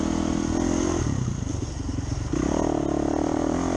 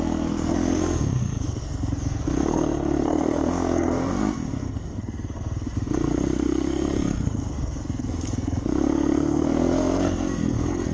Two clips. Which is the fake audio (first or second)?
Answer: second